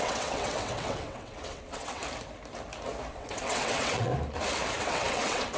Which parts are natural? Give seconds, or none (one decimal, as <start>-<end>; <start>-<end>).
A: 2.0-3.1; 4.1-4.8